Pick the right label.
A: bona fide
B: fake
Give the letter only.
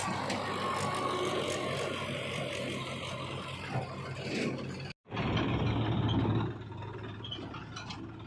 A